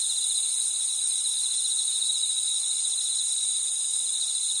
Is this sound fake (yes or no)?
yes